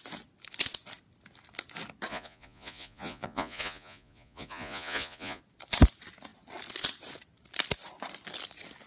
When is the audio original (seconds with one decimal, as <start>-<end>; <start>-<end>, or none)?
0.0-2.1; 5.4-8.9

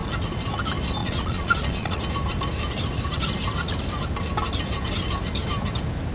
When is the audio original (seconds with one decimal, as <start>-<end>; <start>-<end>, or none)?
0.0-1.0; 2.0-6.1